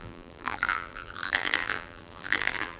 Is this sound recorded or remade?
remade